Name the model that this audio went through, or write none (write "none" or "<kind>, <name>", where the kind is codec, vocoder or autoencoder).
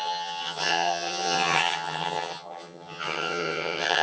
vocoder, HiFi-GAN